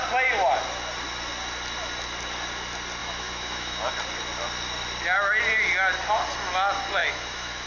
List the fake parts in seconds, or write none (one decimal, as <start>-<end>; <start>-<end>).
3.0-3.9; 7.0-7.7